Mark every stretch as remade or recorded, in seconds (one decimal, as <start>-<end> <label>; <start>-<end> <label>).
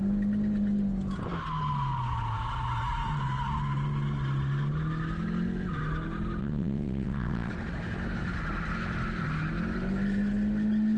0.0-6.4 recorded; 6.4-7.5 remade; 7.5-11.0 recorded